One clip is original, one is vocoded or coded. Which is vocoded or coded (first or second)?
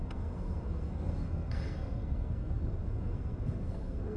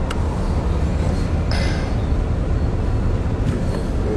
first